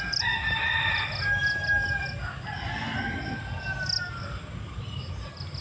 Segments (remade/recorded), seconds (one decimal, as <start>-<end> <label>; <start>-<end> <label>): 0.0-5.6 recorded